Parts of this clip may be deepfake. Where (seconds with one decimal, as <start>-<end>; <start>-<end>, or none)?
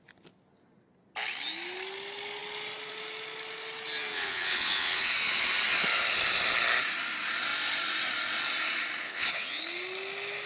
4.1-5.1; 9.0-9.6